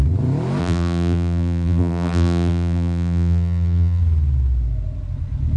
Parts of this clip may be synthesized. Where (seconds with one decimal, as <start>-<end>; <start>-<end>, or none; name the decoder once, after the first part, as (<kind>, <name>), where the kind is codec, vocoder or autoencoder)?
0.6-4.0 (vocoder, BigVGAN v2)